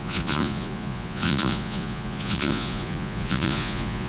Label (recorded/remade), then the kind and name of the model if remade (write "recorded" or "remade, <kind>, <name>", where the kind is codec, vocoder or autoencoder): remade, vocoder, Vocos